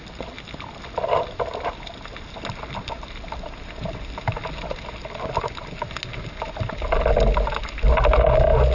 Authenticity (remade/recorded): recorded